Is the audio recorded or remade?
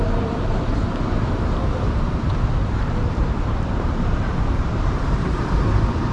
remade